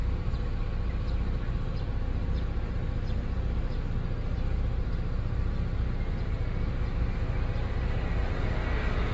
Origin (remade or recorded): recorded